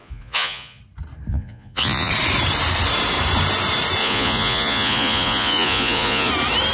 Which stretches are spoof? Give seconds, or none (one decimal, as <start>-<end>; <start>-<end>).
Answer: 0.0-0.8; 1.3-2.1; 4.0-6.3